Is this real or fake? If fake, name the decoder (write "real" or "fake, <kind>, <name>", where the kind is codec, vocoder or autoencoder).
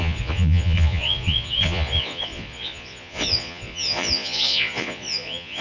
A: fake, vocoder, Vocos